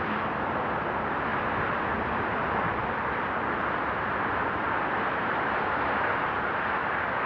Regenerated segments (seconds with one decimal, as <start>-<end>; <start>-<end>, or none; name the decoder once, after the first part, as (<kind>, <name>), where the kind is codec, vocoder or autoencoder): none